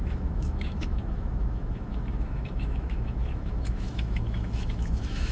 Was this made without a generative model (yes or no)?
no